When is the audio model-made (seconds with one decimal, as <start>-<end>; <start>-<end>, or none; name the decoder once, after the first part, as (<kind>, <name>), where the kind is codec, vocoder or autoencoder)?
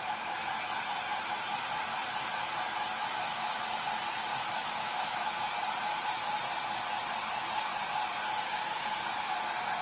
4.3-5.3 (autoencoder, DAC-VAE)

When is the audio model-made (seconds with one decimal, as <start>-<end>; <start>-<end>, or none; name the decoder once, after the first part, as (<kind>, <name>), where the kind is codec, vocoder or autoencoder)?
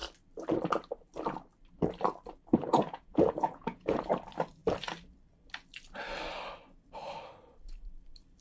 2.5-4.1 (vocoder, Vocos)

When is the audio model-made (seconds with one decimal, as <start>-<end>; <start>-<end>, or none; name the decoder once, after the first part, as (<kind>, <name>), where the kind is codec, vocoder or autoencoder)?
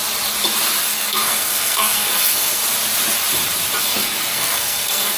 0.9-2.6 (codec, SNAC); 3.8-5.2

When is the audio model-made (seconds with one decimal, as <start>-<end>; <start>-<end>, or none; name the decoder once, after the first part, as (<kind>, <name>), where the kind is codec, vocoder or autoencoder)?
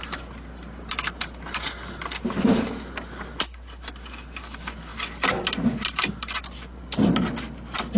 none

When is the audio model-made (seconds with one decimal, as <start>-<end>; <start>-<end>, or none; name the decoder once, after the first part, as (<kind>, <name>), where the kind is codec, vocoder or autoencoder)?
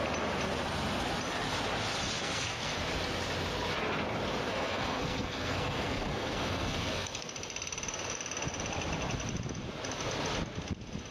2.2-2.8 (codec, SNAC); 4.5-7.3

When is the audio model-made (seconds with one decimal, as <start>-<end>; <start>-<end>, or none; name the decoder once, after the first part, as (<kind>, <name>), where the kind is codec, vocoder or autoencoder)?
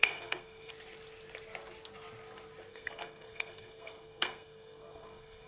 0.0-0.7 (codec, SNAC); 2.7-5.5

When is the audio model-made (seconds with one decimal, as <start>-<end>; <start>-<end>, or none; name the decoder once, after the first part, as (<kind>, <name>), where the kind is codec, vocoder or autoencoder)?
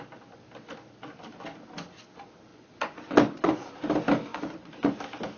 2.5-3.7 (vocoder, Vocos); 4.3-5.0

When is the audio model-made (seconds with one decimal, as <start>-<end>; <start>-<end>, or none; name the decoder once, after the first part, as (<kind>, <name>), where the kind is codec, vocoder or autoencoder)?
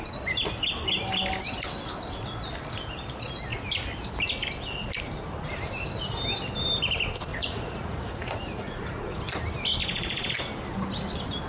7.3-9.2 (vocoder, Vocos); 9.8-10.3